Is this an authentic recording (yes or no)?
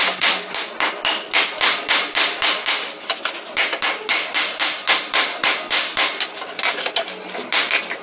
yes